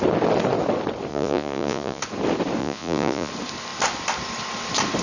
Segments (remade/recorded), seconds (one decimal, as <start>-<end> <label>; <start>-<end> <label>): 0.0-1.1 recorded; 1.1-2.0 remade; 2.0-2.6 recorded; 2.6-3.3 remade; 3.3-5.0 recorded